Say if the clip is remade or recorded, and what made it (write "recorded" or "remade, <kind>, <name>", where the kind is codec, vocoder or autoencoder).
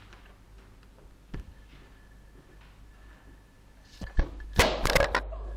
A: recorded